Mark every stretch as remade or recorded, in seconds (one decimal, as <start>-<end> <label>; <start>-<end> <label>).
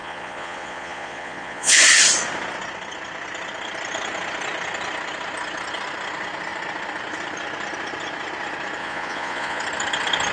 0.0-1.8 remade; 1.8-8.8 recorded; 8.8-9.6 remade; 9.6-10.3 recorded